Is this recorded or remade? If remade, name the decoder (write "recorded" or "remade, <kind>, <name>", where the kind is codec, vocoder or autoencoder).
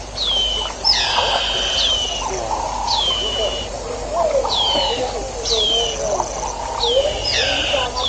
recorded